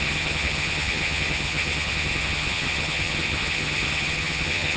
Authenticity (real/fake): fake